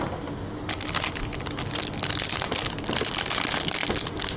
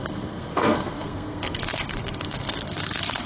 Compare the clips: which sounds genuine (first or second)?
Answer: first